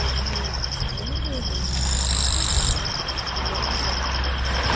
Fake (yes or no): no